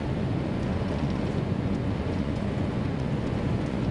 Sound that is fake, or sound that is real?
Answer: fake